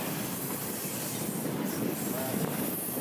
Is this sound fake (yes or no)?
no